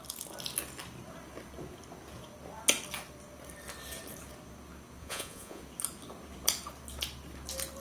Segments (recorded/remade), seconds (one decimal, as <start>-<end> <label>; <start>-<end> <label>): 0.0-5.0 recorded; 5.0-5.6 remade; 5.6-7.8 recorded

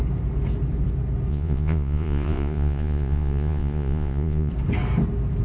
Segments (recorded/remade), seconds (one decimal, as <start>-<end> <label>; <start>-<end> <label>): 0.0-1.3 recorded; 1.3-4.5 remade; 4.5-5.4 recorded

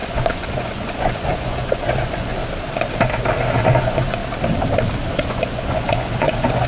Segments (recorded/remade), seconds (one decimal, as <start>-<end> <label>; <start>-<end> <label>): 0.0-2.3 remade; 2.3-3.6 recorded; 3.6-4.2 remade; 4.2-5.1 recorded; 5.1-6.7 remade